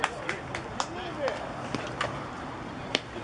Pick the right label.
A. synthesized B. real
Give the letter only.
B